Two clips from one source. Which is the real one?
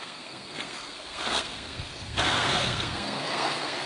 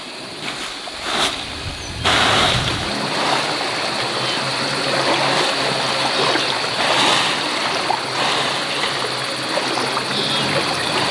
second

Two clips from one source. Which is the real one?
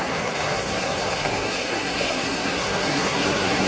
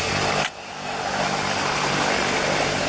second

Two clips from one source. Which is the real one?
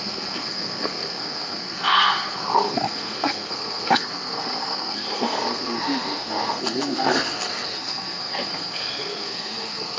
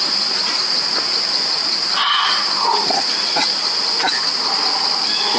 second